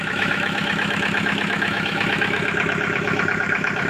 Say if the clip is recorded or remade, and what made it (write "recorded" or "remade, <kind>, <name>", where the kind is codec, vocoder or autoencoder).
remade, autoencoder, DAC-VAE